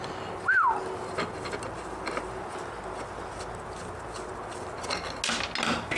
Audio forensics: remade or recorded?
recorded